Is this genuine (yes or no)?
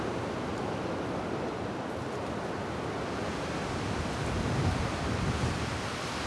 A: yes